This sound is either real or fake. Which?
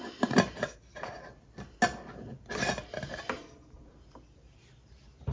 real